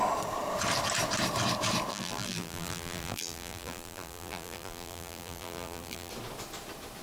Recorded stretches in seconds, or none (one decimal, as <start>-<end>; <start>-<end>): 0.0-1.9; 6.1-7.0